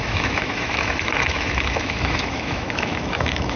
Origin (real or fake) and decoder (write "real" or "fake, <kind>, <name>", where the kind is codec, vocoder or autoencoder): fake, autoencoder, DAC-VAE